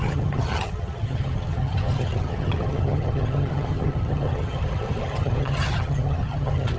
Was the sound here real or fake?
fake